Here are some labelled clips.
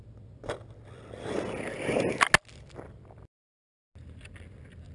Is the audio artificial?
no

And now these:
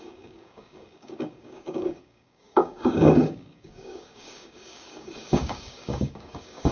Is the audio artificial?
yes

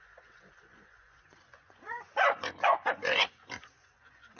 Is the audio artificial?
yes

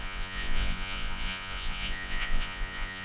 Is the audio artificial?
yes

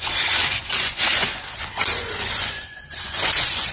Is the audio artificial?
yes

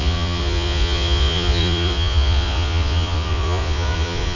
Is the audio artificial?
yes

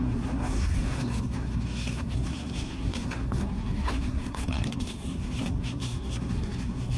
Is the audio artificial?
yes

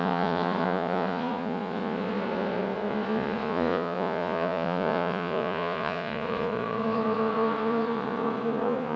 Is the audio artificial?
yes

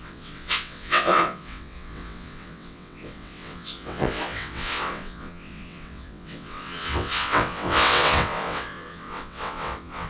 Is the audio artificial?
yes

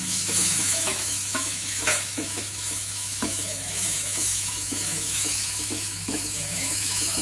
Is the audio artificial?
yes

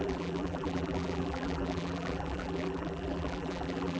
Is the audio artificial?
yes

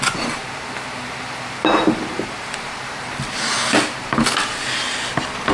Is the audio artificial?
no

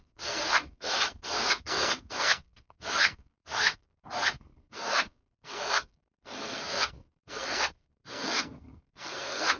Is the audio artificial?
yes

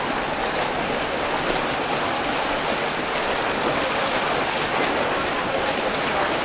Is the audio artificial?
no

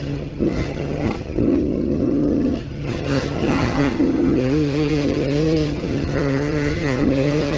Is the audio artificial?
yes